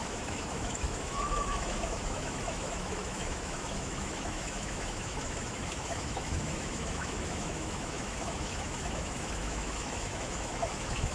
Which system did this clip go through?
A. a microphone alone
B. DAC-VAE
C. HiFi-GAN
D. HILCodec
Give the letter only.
B